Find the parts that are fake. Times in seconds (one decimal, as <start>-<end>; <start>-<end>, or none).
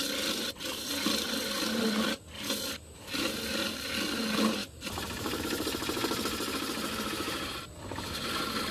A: 4.6-5.4